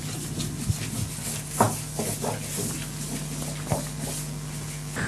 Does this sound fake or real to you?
real